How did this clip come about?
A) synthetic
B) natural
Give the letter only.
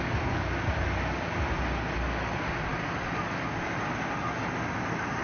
B